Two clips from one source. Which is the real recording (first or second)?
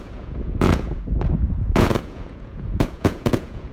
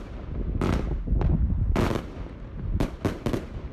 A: second